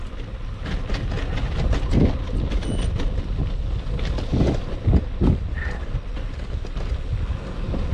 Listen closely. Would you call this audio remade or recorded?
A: recorded